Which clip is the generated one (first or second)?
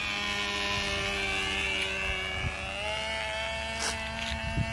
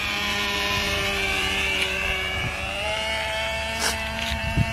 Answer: second